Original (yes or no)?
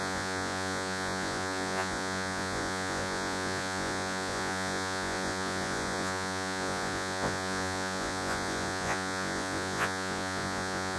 no